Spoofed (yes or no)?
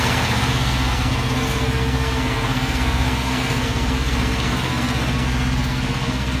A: yes